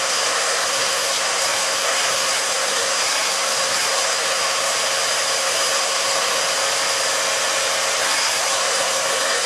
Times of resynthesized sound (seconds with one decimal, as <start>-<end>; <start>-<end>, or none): 0.0-4.7; 5.4-6.4; 8.0-9.5